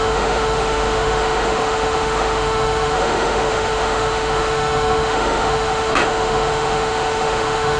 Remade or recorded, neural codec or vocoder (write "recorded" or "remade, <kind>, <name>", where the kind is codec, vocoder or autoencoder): remade, autoencoder, DAC-VAE